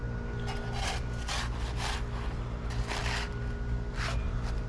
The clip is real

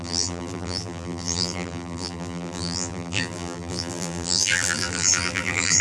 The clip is fake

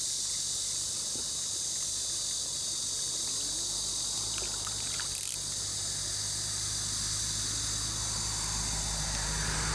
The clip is real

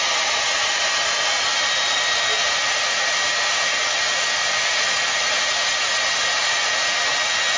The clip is real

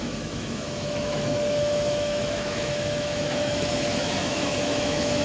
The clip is fake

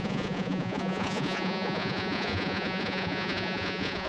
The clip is fake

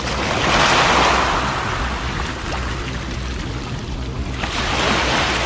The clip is real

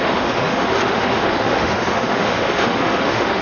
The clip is fake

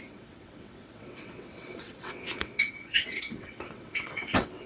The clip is fake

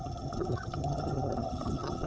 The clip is fake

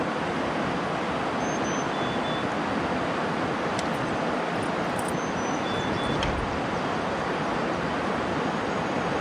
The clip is real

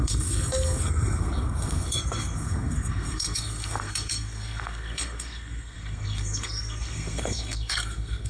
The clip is fake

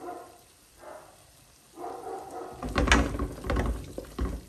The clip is real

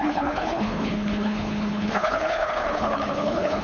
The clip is fake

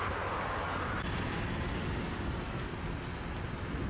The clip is real